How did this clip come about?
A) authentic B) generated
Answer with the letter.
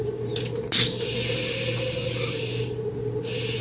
A